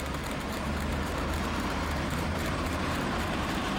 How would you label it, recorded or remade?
remade